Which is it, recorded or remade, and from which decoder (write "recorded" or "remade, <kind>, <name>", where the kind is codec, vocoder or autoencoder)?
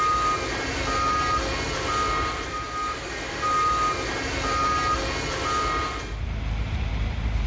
recorded